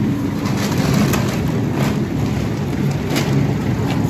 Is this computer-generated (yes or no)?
no